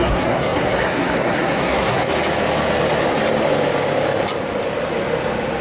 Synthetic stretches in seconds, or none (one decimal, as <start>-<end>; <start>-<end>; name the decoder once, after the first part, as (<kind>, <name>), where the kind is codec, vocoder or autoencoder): 0.0-2.1 (codec, SNAC)